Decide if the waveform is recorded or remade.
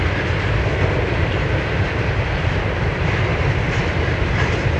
recorded